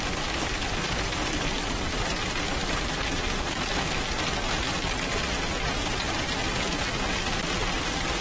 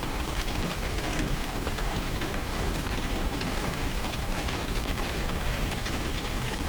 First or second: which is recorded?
first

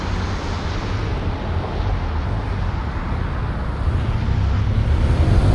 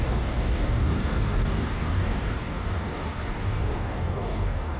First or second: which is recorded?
first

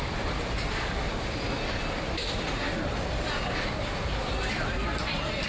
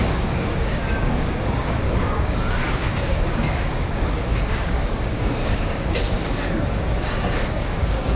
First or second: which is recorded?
first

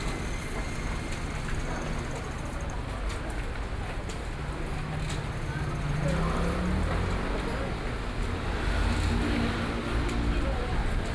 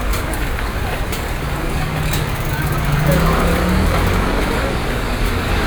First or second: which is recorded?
first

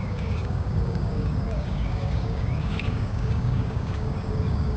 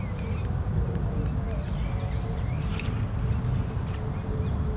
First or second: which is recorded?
second